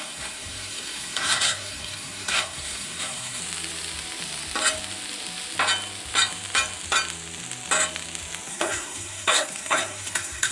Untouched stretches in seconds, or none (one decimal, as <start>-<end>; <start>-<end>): 3.4-8.5

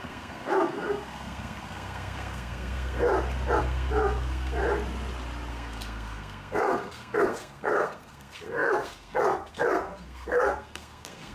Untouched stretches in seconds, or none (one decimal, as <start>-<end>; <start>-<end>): 3.1-3.6; 4.6-5.5

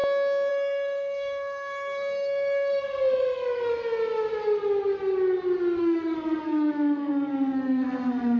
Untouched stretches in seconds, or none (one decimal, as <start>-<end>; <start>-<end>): 0.0-0.5; 3.8-5.8

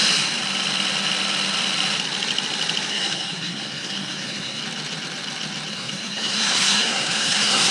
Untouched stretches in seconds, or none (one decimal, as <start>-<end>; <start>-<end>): 0.0-2.9; 4.6-5.7

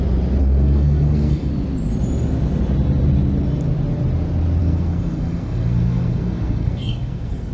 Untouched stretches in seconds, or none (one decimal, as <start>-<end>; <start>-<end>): 0.0-0.4; 1.5-4.6